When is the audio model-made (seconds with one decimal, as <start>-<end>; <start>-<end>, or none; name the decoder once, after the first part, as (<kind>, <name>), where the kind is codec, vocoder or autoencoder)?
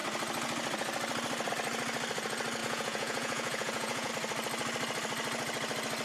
2.6-4.1 (vocoder, Vocos)